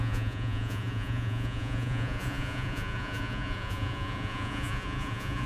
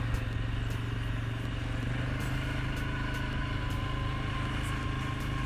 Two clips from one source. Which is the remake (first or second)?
first